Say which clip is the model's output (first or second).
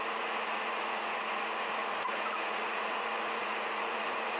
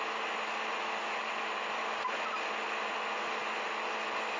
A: first